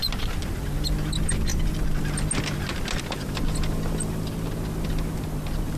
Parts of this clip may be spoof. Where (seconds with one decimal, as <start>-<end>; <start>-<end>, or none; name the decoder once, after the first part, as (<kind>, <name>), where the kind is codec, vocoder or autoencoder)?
none